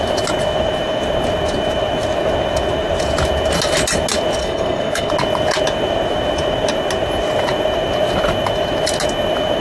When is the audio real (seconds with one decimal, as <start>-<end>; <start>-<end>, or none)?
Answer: 0.0-4.4; 5.1-9.6